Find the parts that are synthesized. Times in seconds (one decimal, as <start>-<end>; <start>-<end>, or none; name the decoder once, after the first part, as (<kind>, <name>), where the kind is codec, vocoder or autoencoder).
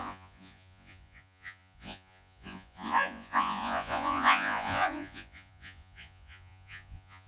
0.0-7.3 (vocoder, Vocos)